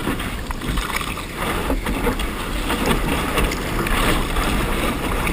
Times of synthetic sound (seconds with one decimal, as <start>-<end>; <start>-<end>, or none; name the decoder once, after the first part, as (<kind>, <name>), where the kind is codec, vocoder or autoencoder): none